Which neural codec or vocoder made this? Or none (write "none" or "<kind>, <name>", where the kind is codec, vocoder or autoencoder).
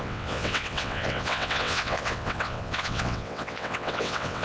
vocoder, WaveNeXt